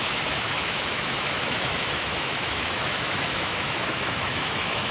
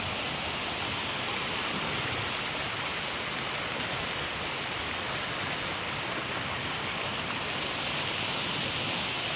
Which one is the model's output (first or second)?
first